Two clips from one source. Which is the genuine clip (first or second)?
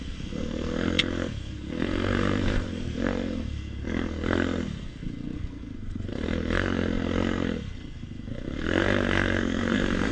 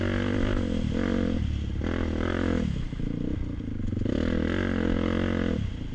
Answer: second